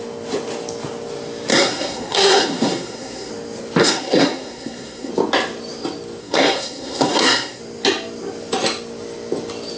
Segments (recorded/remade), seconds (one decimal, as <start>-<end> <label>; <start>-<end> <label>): 0.0-1.5 recorded; 1.5-3.3 remade; 3.3-3.8 recorded; 3.8-5.1 remade; 5.1-6.2 recorded; 6.2-7.6 remade; 7.6-9.8 recorded